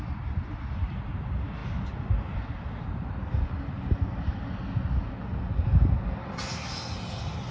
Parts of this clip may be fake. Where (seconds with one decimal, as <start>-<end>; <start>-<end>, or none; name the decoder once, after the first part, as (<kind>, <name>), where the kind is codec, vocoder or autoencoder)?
none